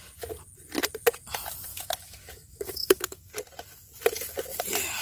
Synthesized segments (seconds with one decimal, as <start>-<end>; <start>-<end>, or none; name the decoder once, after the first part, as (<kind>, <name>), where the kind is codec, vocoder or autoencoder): 1.7-3.3 (autoencoder, DAC-VAE)